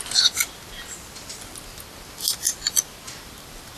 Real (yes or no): yes